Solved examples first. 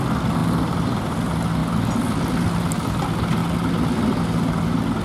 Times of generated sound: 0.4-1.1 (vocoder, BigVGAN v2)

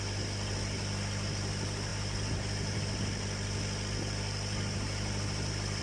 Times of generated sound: none

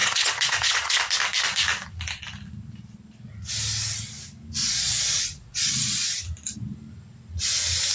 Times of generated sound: 0.0-1.0 (vocoder, Vocos); 4.6-6.0

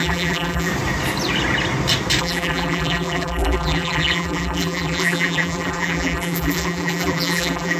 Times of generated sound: 0.0-0.7 (vocoder, BigVGAN v2); 2.2-7.8